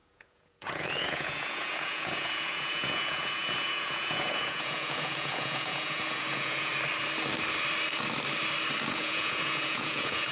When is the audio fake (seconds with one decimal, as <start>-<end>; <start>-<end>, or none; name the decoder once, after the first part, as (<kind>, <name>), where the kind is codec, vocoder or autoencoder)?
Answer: 0.0-6.7 (vocoder, Vocos); 8.9-10.3

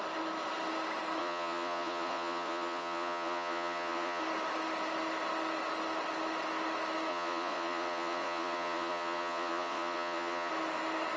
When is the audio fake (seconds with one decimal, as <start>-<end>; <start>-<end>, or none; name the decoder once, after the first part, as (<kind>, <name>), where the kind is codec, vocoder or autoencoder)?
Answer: 1.2-4.2 (vocoder, Vocos); 7.1-10.5

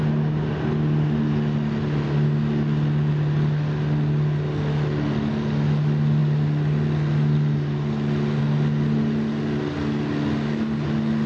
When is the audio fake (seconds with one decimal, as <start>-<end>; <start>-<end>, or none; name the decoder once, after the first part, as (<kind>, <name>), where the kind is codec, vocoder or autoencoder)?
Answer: none

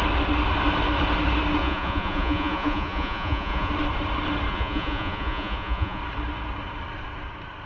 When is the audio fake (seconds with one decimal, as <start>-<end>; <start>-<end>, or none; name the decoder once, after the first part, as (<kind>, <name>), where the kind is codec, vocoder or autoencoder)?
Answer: 1.6-3.7 (vocoder, Vocos); 4.5-6.0

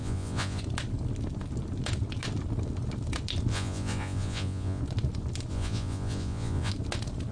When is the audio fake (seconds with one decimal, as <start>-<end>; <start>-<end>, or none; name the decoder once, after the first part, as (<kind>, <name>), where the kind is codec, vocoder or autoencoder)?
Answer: 0.0-0.6 (vocoder, Vocos); 3.5-4.8; 5.5-6.7

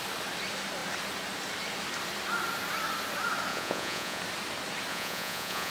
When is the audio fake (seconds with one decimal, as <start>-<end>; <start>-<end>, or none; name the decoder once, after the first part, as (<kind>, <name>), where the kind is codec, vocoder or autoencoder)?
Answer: 3.5-4.2 (vocoder, Vocos); 4.9-5.7